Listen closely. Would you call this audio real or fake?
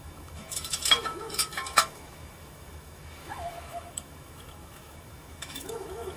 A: fake